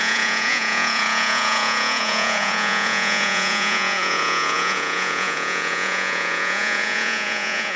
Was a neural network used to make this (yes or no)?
yes